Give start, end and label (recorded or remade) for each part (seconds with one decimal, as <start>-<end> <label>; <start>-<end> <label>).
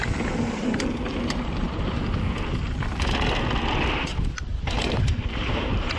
0.0-1.1 recorded; 1.1-1.9 remade; 1.9-4.5 recorded; 4.5-6.0 remade